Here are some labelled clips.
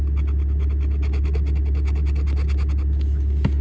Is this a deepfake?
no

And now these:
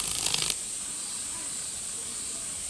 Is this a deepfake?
no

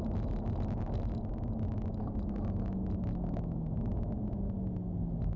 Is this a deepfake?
no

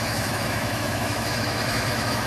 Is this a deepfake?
yes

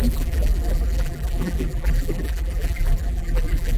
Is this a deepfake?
yes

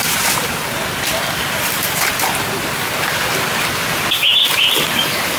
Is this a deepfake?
yes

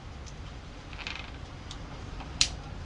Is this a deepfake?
yes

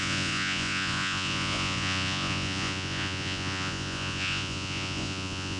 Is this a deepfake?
yes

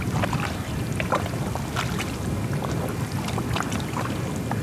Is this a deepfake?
no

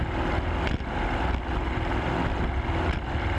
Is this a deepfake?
no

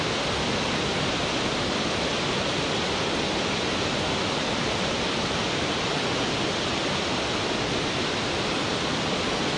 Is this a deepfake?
no